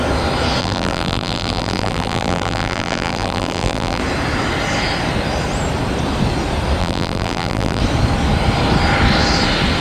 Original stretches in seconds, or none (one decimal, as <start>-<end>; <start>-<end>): 0.0-0.6; 4.0-6.8; 7.8-9.8